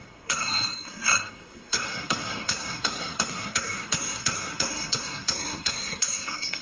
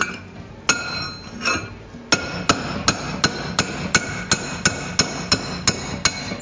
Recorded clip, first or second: second